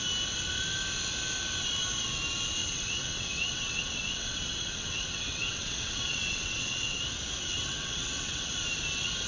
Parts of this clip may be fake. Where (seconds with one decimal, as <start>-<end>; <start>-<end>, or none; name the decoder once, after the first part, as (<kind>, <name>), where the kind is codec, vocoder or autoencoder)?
2.6-7.0 (vocoder, WaveNeXt); 7.4-8.5